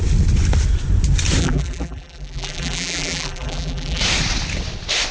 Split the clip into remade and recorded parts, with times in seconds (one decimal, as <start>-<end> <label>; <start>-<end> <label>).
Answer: 0.0-1.4 recorded; 1.4-4.0 remade; 4.0-5.1 recorded